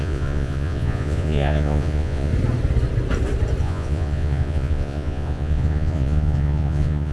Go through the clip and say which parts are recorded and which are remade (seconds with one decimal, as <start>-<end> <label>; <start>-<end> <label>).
0.0-2.3 remade; 2.3-3.6 recorded; 3.6-7.1 remade